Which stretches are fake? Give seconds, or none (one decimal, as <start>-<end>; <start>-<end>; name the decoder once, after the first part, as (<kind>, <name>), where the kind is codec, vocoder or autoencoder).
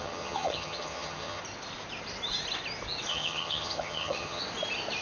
0.0-1.4 (vocoder, HiFi-GAN); 3.1-4.4